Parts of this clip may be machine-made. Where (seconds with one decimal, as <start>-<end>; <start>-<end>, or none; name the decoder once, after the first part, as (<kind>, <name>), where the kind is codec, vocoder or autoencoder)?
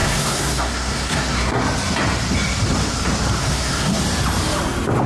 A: 0.0-1.6 (codec, SNAC); 3.4-4.0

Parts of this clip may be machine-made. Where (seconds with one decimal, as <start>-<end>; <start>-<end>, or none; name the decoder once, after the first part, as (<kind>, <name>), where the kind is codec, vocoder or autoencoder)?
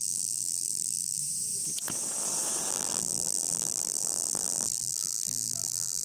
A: 0.0-1.2 (vocoder, BigVGAN v2); 2.7-6.0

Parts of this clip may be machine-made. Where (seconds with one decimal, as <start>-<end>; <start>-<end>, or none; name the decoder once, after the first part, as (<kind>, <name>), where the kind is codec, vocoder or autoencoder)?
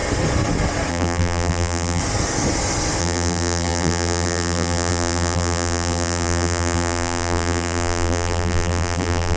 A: 0.9-2.0 (vocoder, BigVGAN v2); 3.0-9.4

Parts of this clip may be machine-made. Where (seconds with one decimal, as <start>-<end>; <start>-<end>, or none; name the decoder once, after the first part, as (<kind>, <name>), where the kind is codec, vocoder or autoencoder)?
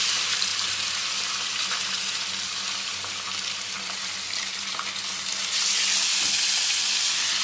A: 0.5-4.7 (vocoder, BigVGAN v2)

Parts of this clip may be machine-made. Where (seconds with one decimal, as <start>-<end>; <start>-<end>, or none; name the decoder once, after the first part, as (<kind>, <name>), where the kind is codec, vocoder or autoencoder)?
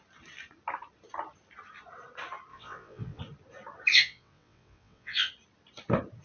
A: 2.5-3.2 (vocoder, WaveNeXt); 3.9-5.3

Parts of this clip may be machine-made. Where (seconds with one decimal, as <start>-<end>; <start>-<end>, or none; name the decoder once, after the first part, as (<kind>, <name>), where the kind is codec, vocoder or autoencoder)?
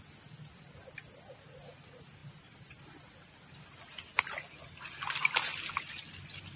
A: 2.2-3.1 (vocoder, BigVGAN v2)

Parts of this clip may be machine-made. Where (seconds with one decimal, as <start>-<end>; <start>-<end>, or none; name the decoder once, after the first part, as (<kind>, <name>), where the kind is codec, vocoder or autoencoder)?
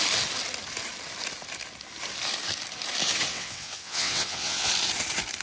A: 3.3-4.7 (vocoder, WaveNeXt)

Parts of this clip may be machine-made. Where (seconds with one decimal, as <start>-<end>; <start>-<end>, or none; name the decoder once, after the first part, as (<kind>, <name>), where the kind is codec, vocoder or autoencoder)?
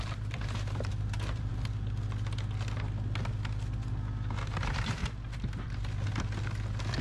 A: 0.0-1.5 (vocoder, BigVGAN v2); 4.6-5.0